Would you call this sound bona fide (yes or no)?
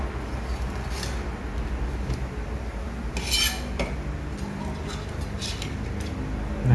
yes